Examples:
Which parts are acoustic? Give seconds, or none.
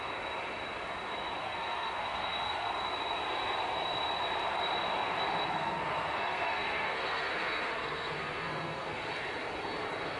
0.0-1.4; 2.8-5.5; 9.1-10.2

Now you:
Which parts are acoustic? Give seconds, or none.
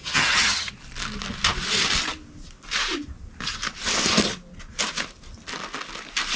0.7-6.4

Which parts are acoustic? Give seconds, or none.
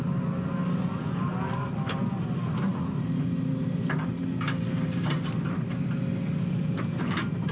0.0-7.5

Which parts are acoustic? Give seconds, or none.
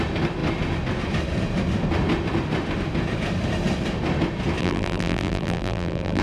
0.0-4.6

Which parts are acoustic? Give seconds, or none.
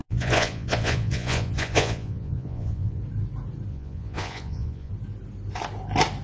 3.0-3.7; 4.9-6.2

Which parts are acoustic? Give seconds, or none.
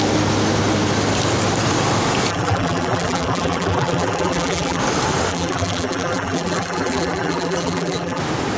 0.0-2.3; 4.8-5.3; 8.2-8.6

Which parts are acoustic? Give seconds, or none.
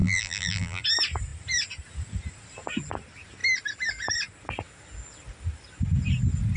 0.8-6.6